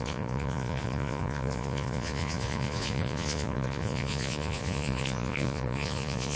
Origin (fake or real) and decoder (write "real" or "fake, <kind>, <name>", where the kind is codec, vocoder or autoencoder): fake, vocoder, Vocos